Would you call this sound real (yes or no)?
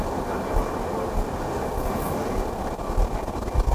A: yes